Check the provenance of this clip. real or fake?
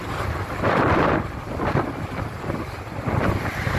real